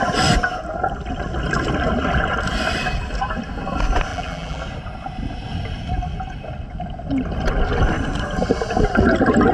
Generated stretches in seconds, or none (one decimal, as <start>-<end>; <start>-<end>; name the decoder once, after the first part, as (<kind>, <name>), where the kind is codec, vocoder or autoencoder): 4.1-4.6 (vocoder, BigVGAN v2)